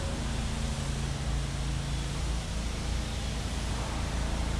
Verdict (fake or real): real